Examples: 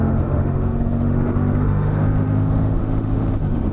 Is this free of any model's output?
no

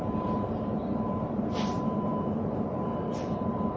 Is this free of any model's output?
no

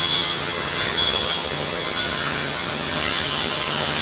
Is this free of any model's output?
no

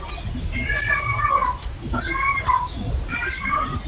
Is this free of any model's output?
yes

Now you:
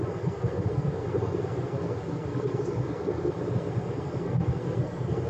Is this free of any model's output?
no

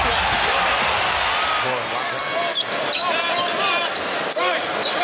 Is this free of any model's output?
yes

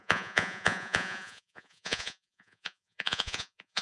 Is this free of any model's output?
no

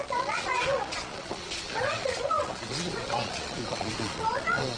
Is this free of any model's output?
no